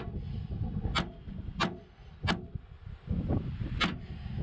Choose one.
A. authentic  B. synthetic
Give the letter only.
A